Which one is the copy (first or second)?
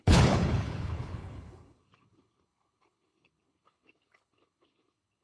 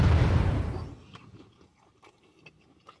first